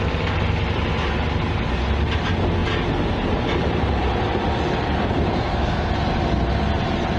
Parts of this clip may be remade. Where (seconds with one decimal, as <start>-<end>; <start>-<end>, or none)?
5.3-5.9